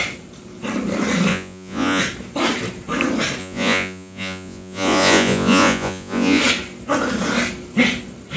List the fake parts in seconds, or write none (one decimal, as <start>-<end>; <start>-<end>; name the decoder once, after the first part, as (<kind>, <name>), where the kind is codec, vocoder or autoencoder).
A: 1.3-2.0 (vocoder, Vocos); 3.4-6.4